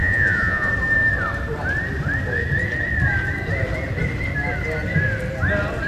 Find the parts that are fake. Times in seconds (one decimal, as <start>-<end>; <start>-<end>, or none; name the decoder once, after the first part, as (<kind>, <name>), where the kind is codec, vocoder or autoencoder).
0.0-0.7 (vocoder, Vocos)